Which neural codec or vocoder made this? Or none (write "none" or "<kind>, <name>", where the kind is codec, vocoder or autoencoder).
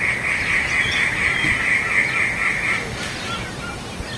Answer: none